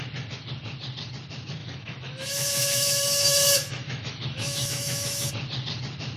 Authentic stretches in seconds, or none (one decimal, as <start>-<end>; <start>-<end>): 0.0-1.6; 5.3-6.2